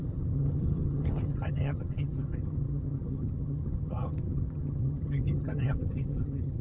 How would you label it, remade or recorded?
remade